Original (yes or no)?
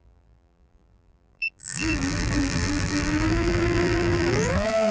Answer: no